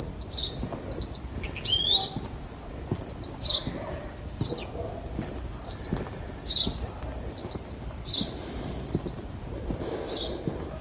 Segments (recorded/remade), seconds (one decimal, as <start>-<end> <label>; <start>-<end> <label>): 0.0-10.8 recorded

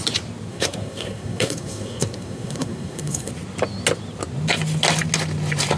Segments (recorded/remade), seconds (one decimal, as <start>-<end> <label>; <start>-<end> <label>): 0.0-0.5 recorded; 0.5-3.3 remade; 3.3-5.8 recorded

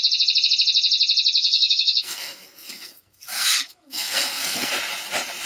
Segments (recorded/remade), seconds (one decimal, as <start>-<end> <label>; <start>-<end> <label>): 0.0-1.4 recorded; 1.4-4.7 remade; 4.7-5.5 recorded

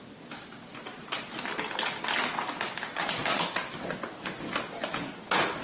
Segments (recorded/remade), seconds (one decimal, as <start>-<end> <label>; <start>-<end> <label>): 0.0-5.6 recorded

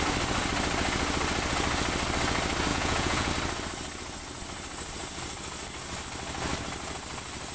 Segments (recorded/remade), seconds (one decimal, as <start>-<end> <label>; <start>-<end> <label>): 0.0-2.7 recorded; 2.7-3.3 remade; 3.3-7.5 recorded

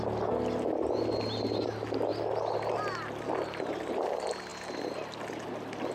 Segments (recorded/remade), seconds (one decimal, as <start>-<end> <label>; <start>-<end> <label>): 0.0-5.9 recorded